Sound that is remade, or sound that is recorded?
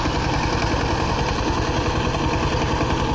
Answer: recorded